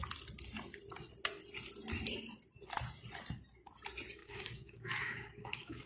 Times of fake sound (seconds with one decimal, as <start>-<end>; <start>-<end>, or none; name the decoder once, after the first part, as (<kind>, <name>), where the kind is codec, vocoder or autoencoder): 4.2-5.9 (autoencoder, DAC-VAE)